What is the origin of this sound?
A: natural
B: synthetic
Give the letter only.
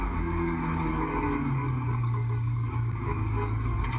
B